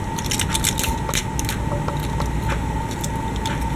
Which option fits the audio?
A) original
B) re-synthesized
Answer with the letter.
A